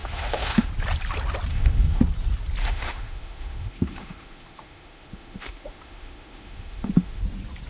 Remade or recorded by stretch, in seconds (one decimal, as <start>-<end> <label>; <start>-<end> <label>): 0.0-0.7 remade; 0.7-1.5 recorded; 1.5-2.0 remade; 2.0-2.6 recorded; 2.6-7.2 remade; 7.2-7.7 recorded